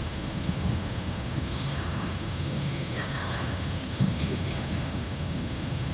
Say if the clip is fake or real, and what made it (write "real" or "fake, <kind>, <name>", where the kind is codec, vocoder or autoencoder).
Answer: fake, autoencoder, DAC-VAE